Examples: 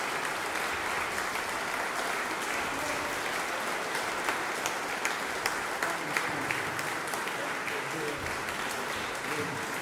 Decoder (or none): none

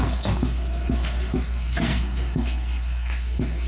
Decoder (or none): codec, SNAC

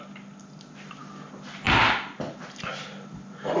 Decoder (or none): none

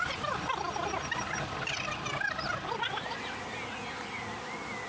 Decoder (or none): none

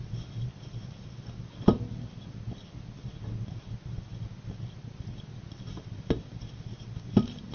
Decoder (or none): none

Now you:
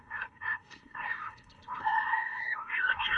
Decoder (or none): codec, SNAC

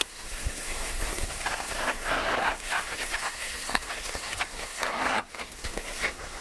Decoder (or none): codec, SNAC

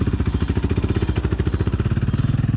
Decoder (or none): none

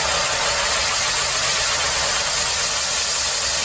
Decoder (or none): none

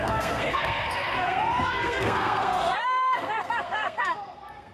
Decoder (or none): codec, SNAC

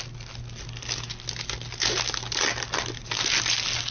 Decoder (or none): none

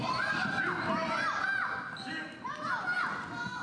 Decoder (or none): none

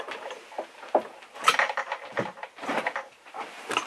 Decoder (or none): none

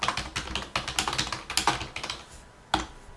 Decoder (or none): none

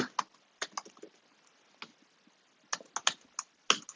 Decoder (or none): none